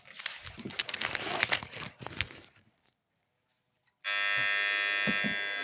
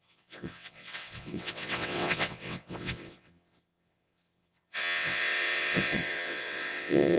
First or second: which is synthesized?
second